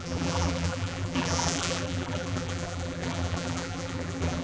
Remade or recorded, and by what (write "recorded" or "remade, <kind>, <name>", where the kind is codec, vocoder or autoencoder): remade, vocoder, BigVGAN v2